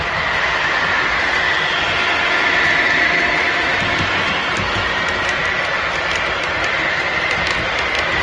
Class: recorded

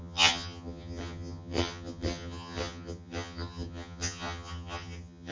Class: remade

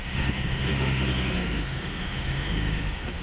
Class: remade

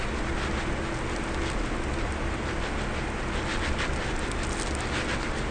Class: recorded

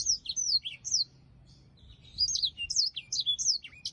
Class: recorded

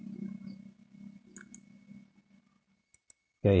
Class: recorded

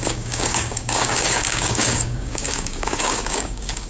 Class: remade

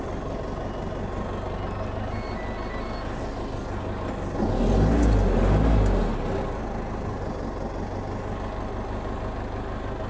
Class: recorded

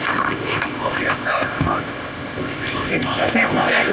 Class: remade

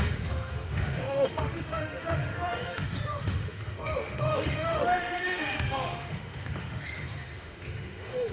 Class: remade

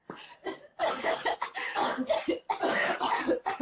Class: recorded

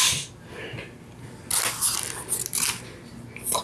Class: recorded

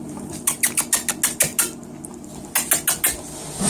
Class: recorded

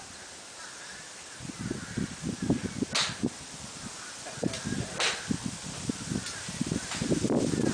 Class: recorded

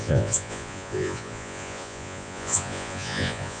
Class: remade